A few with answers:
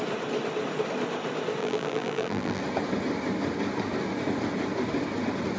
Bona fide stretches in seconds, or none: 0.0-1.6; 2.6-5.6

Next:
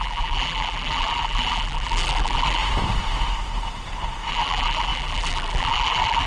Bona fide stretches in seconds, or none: 2.6-4.3

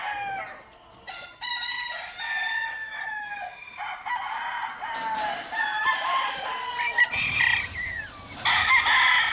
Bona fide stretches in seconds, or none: 0.0-9.3

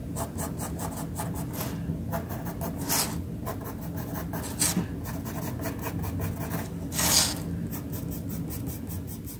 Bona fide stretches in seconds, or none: 1.1-9.4

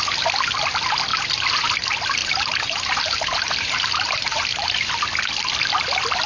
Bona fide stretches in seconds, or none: 0.0-1.1; 1.7-2.2; 4.9-6.3

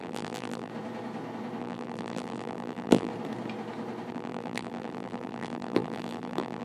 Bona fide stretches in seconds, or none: 0.7-1.6; 3.1-4.1